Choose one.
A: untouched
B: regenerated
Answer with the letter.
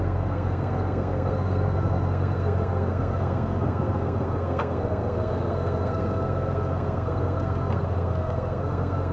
B